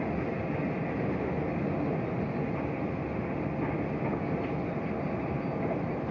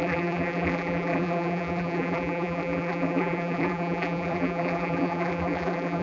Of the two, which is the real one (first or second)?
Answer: first